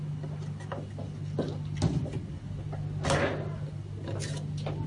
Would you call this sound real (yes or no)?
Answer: yes